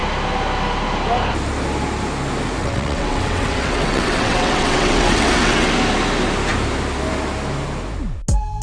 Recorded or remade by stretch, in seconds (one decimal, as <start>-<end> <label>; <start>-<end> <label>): 0.0-2.6 recorded; 2.6-5.7 remade; 5.7-8.6 recorded